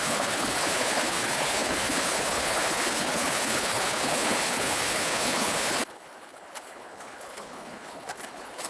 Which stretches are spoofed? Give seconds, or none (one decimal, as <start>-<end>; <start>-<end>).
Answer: 0.0-8.7